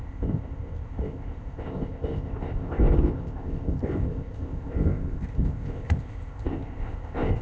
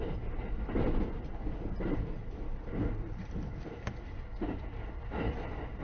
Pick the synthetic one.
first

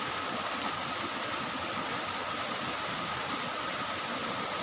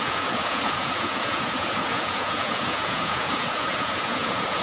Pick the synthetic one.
second